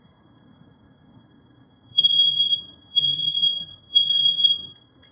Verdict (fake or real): fake